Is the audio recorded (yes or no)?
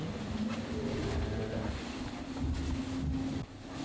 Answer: yes